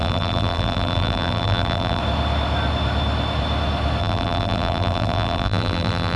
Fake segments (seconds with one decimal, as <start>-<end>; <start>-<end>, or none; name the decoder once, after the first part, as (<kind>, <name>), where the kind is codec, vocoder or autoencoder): 0.0-2.0 (vocoder, BigVGAN v2); 4.0-6.2